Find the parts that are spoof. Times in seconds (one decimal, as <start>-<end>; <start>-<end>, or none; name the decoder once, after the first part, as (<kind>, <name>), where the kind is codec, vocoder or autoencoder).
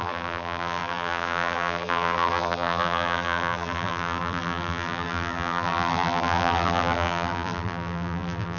0.0-8.6 (vocoder, BigVGAN v2)